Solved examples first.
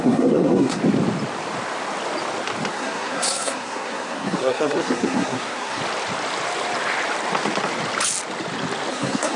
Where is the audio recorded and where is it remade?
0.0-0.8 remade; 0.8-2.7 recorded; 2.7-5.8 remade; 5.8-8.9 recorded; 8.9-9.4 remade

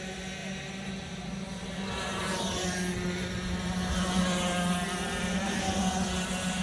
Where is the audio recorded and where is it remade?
0.0-6.6 recorded

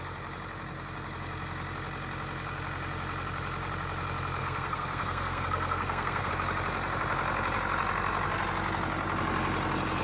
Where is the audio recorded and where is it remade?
0.0-4.4 recorded; 4.4-6.3 remade; 6.3-10.0 recorded

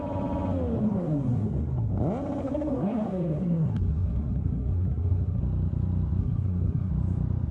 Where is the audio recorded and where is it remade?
0.0-0.8 recorded; 0.8-1.9 remade; 1.9-2.4 recorded; 2.4-5.4 remade; 5.4-6.2 recorded; 6.2-6.9 remade; 6.9-7.5 recorded